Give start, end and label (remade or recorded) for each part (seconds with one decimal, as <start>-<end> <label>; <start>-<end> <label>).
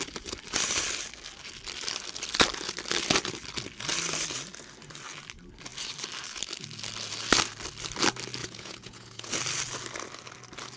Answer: 0.0-8.4 recorded; 8.4-9.3 remade; 9.3-10.8 recorded